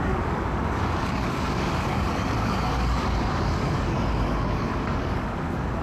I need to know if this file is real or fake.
fake